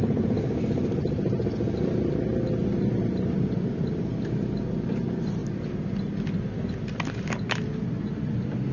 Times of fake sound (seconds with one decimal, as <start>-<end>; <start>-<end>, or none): none

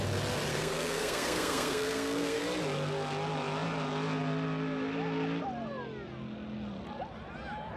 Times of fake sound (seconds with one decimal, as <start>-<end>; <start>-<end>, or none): 0.5-2.4

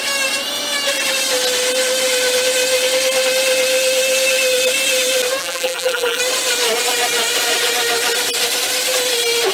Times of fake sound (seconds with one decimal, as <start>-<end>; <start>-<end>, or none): 5.4-6.2

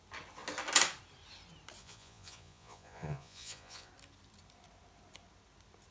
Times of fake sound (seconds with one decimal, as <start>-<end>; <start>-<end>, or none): 1.8-3.9

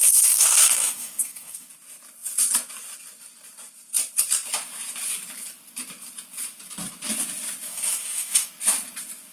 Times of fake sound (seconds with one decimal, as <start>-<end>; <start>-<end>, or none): 0.0-1.7; 7.7-8.5